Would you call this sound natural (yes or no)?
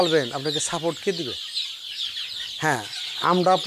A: yes